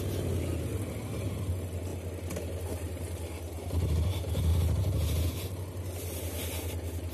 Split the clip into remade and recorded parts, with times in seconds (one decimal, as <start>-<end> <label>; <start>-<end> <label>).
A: 0.0-7.1 recorded